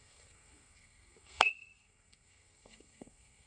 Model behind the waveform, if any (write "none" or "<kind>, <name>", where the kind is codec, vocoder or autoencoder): codec, SNAC